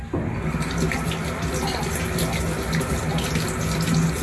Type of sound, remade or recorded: recorded